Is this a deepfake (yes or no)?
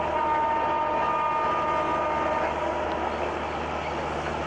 no